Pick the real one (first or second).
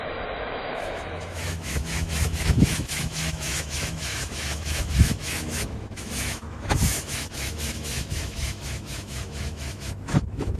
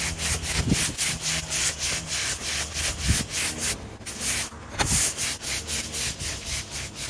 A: second